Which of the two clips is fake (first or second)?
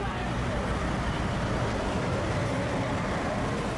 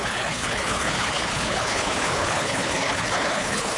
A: second